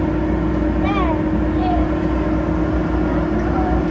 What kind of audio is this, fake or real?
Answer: real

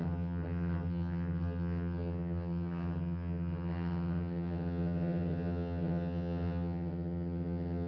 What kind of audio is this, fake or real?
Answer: fake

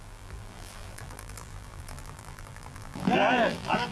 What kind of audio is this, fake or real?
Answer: fake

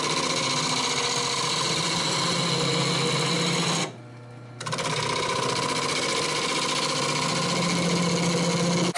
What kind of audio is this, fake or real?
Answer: real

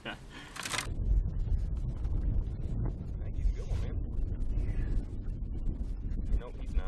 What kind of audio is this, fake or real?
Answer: real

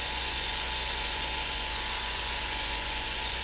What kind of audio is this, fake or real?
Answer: fake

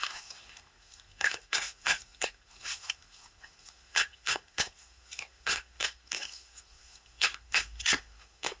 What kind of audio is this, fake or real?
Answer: fake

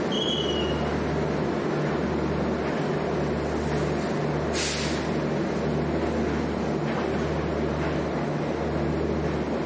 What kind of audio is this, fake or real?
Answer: real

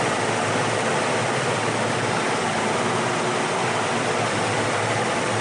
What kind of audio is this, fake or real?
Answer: real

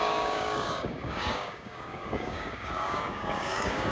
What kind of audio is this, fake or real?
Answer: fake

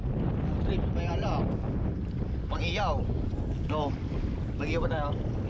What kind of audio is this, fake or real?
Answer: real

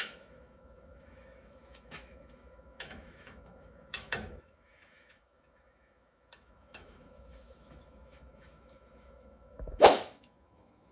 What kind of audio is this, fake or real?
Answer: fake